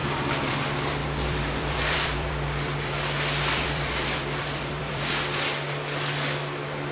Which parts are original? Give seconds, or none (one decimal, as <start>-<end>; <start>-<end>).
0.6-1.0; 5.1-6.9